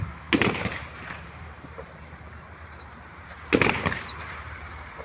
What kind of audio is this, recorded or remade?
remade